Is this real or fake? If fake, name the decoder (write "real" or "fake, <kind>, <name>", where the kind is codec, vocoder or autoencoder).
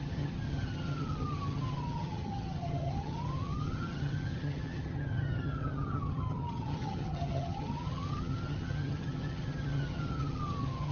fake, vocoder, HiFi-GAN